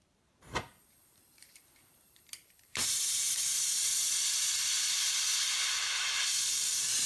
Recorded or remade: remade